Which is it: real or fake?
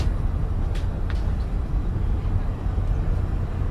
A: real